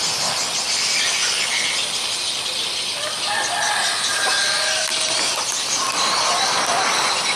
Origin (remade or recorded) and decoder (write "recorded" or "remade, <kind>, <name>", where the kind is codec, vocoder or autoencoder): recorded